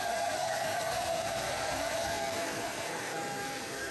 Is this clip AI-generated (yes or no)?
yes